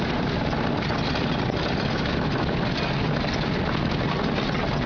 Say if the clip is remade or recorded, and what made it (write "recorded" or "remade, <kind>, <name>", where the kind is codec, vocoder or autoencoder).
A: recorded